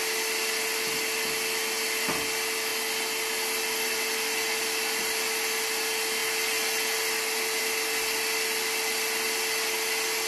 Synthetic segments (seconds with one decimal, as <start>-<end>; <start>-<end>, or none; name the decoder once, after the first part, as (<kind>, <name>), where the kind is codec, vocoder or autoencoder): none